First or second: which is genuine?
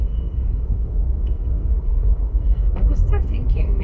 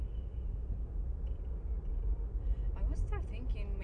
second